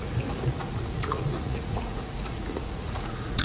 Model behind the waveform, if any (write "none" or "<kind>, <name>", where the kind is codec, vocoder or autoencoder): vocoder, Vocos